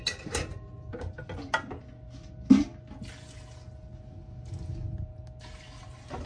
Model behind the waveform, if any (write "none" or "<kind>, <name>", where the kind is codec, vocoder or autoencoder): none